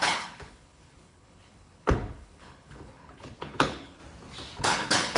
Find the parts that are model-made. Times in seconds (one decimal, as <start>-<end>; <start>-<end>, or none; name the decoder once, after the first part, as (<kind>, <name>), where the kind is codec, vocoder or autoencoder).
0.0-4.0 (codec, HILCodec); 4.6-5.2